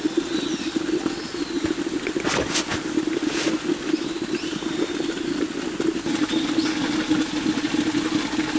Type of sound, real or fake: real